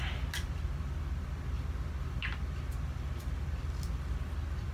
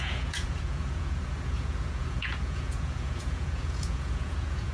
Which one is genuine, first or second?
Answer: first